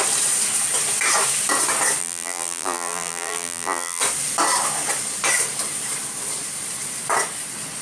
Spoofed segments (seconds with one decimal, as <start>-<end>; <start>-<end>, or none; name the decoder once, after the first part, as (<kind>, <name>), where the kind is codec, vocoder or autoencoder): 2.0-4.0 (vocoder, BigVGAN v2)